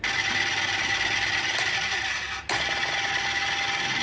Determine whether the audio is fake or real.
real